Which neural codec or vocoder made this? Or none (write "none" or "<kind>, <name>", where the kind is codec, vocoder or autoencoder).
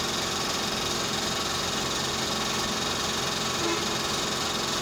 none